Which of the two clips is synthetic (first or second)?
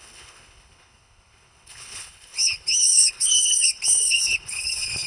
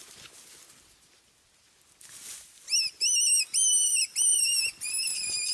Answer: first